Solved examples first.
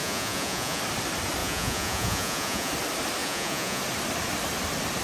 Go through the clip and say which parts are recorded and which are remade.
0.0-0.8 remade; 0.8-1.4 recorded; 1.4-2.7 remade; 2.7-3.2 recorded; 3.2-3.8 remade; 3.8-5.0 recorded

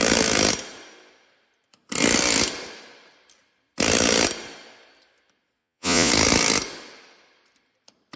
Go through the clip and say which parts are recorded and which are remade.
0.0-5.6 recorded; 5.6-6.1 remade; 6.1-8.2 recorded

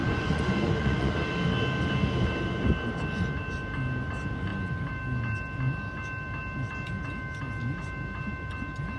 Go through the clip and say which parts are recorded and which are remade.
0.0-1.1 remade; 1.1-9.0 recorded